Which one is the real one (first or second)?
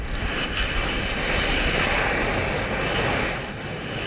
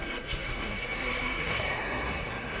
first